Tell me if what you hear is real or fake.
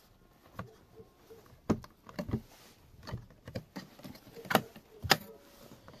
real